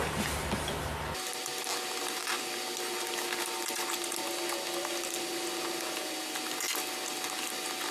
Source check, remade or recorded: recorded